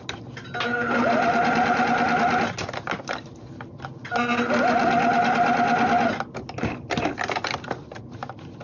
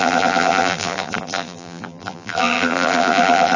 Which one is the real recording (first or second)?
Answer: first